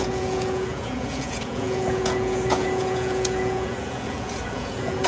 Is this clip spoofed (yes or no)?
yes